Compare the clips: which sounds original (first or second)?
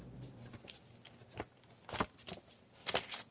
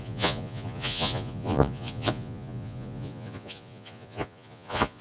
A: first